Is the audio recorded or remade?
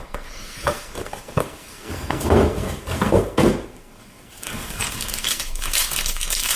remade